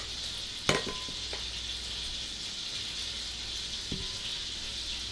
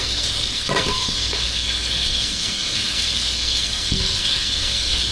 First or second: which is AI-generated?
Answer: second